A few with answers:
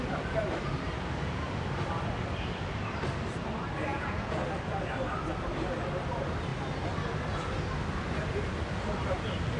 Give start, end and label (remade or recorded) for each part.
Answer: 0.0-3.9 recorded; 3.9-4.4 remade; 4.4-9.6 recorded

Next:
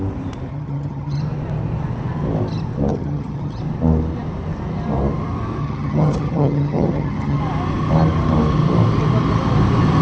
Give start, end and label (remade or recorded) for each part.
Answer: 0.0-0.5 recorded; 0.5-1.2 remade; 1.2-2.9 recorded; 2.9-3.6 remade; 3.6-5.6 recorded; 5.6-7.4 remade; 7.4-10.0 recorded